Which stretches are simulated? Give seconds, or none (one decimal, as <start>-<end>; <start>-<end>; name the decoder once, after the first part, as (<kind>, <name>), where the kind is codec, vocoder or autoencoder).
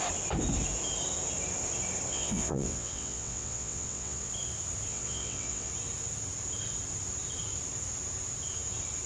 2.1-4.3 (vocoder, WaveNeXt); 4.9-5.7